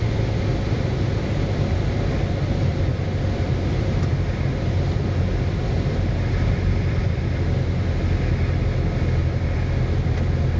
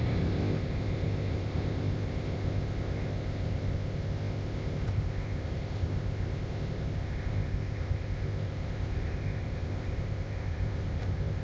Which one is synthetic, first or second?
second